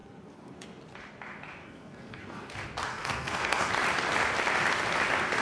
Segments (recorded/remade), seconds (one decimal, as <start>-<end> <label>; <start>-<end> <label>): 0.0-0.8 remade; 0.8-1.6 recorded; 1.6-2.5 remade; 2.5-2.9 recorded; 2.9-3.7 remade; 3.7-5.4 recorded